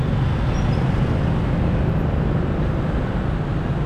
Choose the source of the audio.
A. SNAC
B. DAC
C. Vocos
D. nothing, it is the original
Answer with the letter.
D